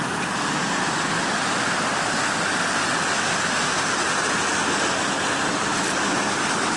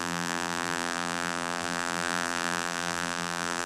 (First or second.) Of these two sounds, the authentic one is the first